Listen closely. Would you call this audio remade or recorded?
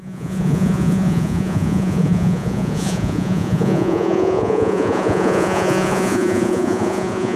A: remade